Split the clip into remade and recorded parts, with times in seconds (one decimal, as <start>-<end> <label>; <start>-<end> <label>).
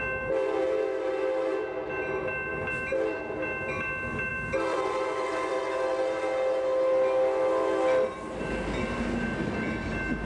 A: 0.0-2.5 recorded; 2.5-3.2 remade; 3.2-4.3 recorded; 4.3-5.6 remade; 5.6-10.3 recorded